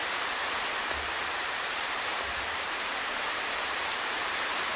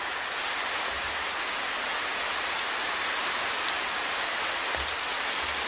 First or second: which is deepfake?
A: first